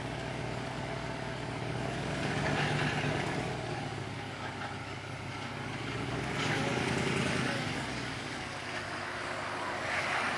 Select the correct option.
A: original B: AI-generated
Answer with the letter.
B